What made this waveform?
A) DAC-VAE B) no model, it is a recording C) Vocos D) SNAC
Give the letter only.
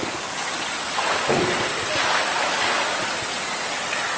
B